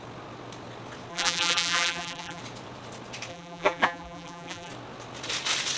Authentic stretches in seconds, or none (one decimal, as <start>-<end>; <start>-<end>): 0.0-1.1; 2.4-3.3; 4.7-5.8